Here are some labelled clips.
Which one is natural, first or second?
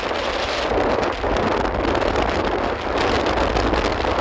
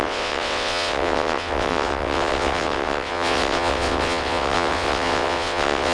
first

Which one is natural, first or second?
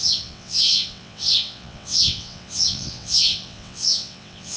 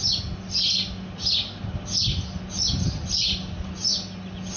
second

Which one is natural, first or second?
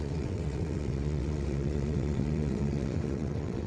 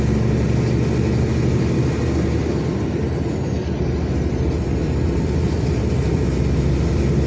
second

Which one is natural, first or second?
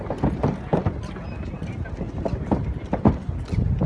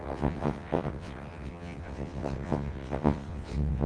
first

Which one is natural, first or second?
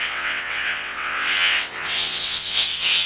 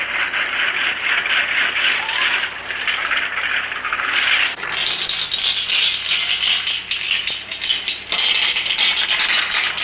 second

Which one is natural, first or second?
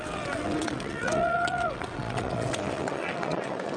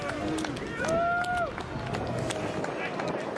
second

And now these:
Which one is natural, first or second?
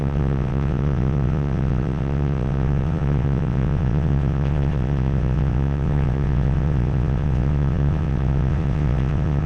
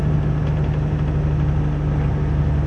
second